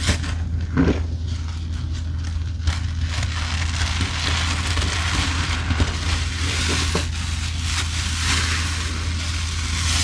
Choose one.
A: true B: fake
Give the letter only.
A